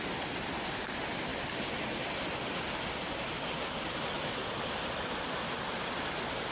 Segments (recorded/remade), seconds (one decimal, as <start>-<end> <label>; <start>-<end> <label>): 0.0-6.5 recorded